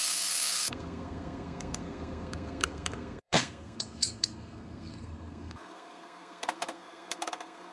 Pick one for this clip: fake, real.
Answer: fake